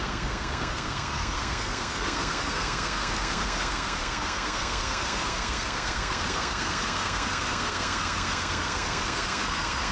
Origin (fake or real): fake